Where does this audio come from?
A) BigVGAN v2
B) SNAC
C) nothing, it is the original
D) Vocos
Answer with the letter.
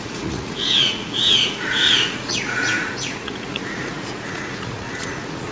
D